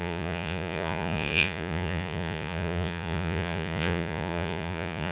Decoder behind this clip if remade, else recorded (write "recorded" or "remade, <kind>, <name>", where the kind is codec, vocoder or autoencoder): remade, vocoder, Vocos